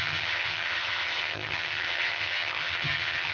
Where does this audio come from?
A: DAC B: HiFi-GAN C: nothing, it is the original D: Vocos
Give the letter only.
B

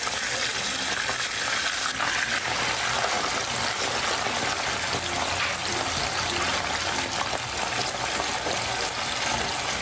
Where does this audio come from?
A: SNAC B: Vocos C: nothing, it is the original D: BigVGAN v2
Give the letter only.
C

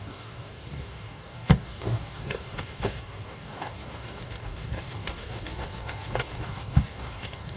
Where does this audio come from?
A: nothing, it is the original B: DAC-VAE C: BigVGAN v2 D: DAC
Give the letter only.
D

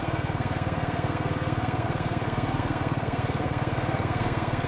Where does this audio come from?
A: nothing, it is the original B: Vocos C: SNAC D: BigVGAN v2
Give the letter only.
C